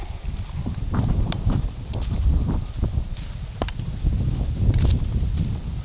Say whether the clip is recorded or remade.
recorded